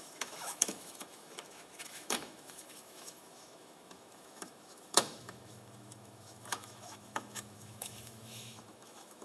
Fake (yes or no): yes